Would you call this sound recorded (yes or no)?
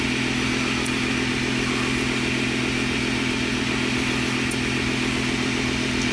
yes